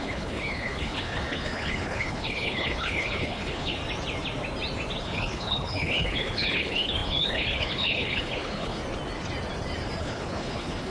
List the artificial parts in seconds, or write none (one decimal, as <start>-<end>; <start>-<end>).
0.0-3.8; 5.0-8.8; 10.0-10.9